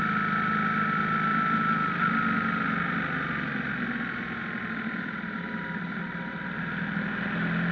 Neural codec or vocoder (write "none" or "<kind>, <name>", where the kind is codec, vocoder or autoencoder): none